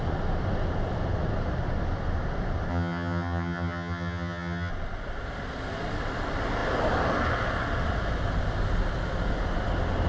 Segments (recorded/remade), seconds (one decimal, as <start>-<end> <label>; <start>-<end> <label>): 0.0-2.7 recorded; 2.7-4.7 remade; 4.7-10.1 recorded